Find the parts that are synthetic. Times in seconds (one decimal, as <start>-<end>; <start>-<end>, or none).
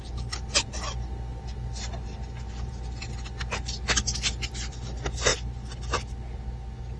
none